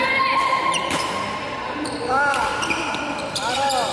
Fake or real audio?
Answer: fake